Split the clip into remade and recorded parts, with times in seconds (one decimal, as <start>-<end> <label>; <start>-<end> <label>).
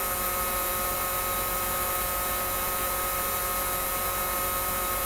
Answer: 0.0-5.1 recorded